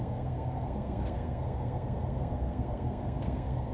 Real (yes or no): no